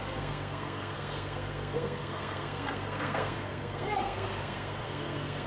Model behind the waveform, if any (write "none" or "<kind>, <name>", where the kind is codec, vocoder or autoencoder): codec, SNAC